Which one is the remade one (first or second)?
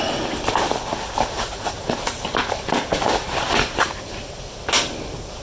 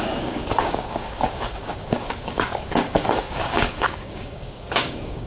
second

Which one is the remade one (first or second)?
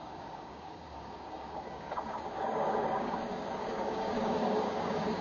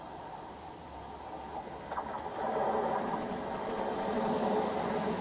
first